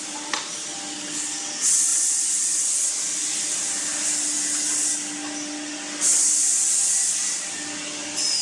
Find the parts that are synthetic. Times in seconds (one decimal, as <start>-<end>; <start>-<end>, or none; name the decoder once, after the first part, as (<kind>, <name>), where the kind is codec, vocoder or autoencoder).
none